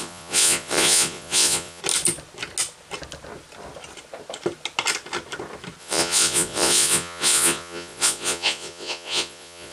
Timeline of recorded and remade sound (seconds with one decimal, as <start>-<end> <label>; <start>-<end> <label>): 0.0-1.8 remade; 1.8-5.8 recorded; 5.8-9.7 remade